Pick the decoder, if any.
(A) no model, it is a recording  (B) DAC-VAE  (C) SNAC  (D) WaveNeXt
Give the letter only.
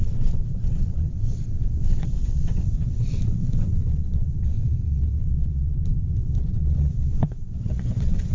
D